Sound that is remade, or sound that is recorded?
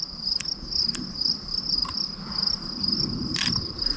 recorded